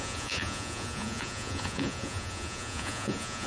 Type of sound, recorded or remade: remade